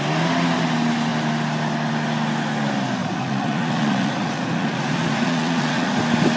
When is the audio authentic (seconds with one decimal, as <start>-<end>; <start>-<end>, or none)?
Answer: 0.0-3.0; 6.0-6.4

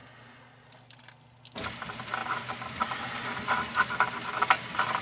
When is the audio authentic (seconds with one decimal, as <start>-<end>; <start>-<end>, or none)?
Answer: 0.0-5.0